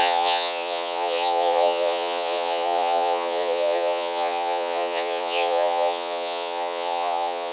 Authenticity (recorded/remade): remade